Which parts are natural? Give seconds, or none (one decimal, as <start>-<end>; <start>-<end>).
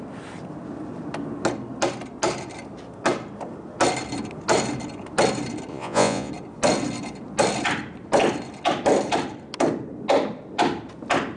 0.0-5.7; 6.3-11.4